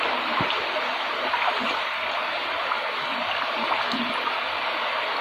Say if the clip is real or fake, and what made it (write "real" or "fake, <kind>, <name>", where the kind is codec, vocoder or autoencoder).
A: real